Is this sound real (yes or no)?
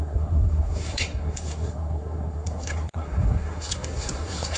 no